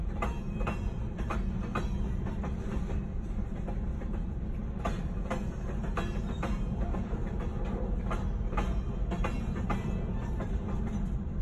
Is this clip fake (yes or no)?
no